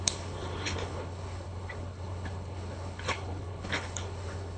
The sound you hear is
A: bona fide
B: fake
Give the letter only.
B